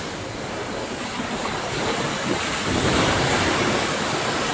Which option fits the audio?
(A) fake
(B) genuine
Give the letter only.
B